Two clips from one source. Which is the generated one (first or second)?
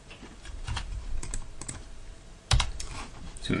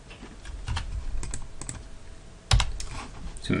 first